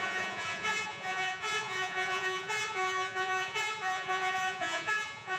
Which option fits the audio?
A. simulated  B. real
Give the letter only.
A